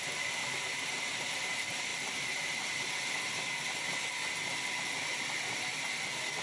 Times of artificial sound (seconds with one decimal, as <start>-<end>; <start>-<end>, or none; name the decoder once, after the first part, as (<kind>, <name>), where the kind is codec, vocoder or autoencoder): none